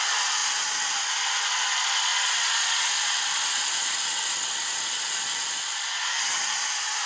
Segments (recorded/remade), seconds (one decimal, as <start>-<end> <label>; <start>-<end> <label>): 0.0-7.1 recorded